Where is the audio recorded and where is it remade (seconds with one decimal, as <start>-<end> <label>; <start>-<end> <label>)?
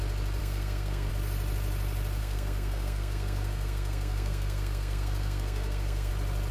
0.0-0.4 recorded; 0.4-1.1 remade; 1.1-2.2 recorded; 2.2-6.1 remade; 6.1-6.5 recorded